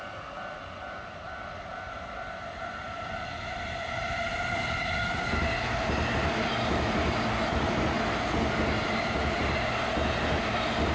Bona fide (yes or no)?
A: yes